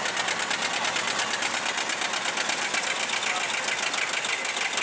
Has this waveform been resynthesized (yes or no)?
no